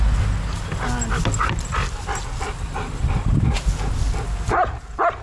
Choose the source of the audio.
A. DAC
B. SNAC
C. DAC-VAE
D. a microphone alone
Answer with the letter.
D